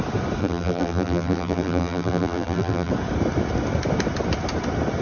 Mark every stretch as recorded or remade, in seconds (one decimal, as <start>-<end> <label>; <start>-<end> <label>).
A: 0.0-0.4 recorded; 0.4-2.9 remade; 2.9-5.0 recorded